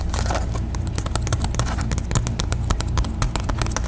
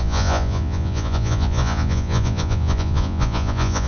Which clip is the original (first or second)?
first